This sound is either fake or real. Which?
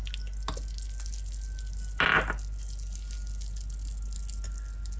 real